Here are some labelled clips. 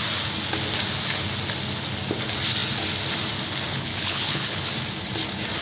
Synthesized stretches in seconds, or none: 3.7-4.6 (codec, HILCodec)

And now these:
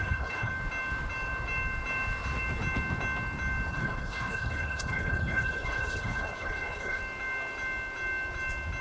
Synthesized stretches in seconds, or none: 0.0-0.5 (codec, HILCodec); 3.7-7.0

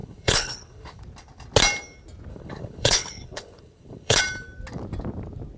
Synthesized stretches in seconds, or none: 0.0-1.0 (codec, HILCodec); 2.3-4.2